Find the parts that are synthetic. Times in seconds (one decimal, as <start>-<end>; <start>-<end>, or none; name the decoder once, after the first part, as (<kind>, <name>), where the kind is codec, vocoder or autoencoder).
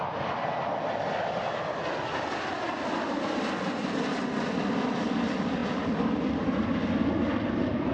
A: none